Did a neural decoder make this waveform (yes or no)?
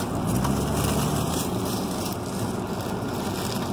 no